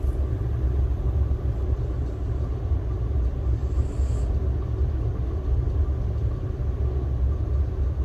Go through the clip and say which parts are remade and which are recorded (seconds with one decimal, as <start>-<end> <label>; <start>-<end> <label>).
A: 0.0-8.0 recorded